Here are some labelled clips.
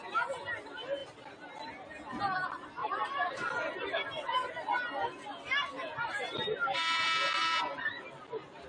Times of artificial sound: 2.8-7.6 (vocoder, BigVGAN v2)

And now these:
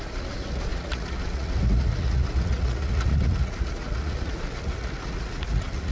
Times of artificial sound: 0.0-5.9 (vocoder, Vocos)

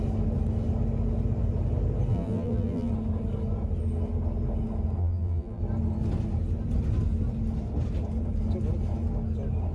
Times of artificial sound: 2.1-2.9 (vocoder, BigVGAN v2); 5.0-5.6

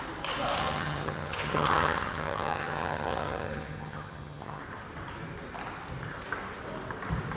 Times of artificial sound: 0.6-4.6 (vocoder, HiFi-GAN)

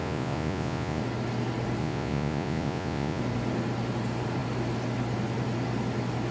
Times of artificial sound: 0.0-1.0 (vocoder, Vocos); 1.8-3.2

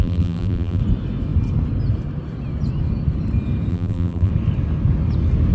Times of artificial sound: 0.0-0.8 (vocoder, BigVGAN v2); 3.7-4.3

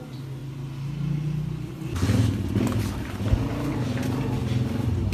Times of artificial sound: none